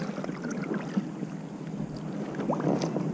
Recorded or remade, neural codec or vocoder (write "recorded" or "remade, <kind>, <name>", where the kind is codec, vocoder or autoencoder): recorded